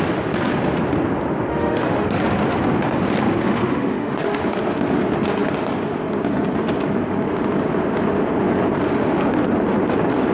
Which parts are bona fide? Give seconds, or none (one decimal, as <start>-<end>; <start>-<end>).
0.0-1.5; 2.2-3.4; 4.4-10.3